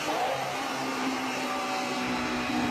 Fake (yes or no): no